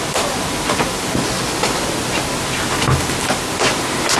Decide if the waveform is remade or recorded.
recorded